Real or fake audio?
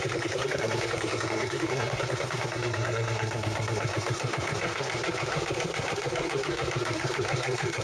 fake